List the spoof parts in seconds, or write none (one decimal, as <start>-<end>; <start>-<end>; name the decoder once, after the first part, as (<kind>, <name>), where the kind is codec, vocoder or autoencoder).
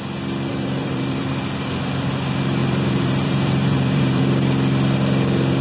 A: 0.5-1.3 (vocoder, BigVGAN v2); 2.6-4.2